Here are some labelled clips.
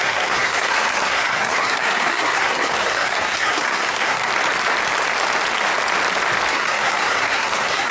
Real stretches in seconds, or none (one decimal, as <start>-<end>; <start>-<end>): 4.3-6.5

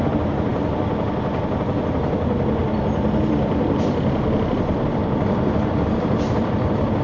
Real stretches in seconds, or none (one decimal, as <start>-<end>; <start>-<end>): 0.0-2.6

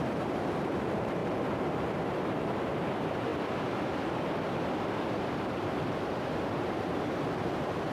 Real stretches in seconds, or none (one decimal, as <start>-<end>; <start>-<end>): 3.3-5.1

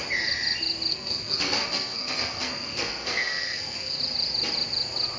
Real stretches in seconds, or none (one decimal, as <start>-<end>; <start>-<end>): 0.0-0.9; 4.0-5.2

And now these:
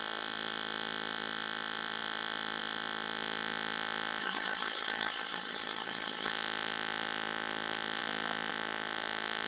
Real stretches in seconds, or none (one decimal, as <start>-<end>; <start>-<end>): 0.0-4.2; 6.3-9.5

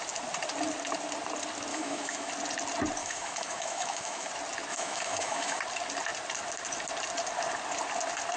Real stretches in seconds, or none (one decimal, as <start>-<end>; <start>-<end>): 0.0-1.7; 2.3-3.0; 4.3-4.7; 5.6-8.4